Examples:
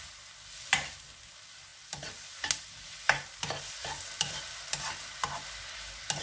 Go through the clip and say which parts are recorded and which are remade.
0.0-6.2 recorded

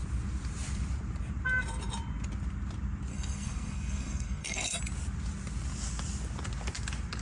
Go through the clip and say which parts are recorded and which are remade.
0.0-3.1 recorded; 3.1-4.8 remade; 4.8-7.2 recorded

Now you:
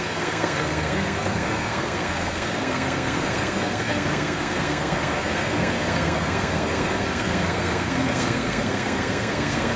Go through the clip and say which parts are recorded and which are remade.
0.0-9.8 remade

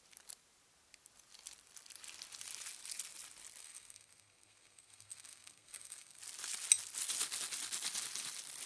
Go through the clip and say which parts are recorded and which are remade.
0.0-3.6 recorded; 3.6-6.2 remade; 6.2-8.7 recorded

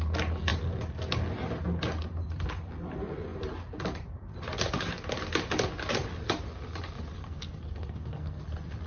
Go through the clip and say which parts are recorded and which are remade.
0.0-7.2 recorded; 7.2-8.4 remade; 8.4-8.9 recorded

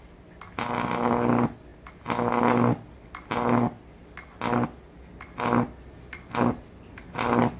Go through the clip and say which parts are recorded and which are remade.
0.0-7.6 recorded